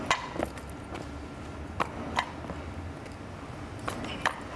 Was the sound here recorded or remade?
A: recorded